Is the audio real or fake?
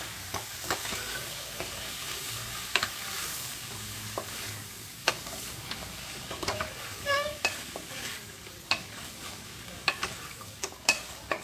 fake